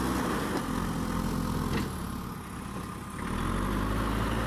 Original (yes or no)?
yes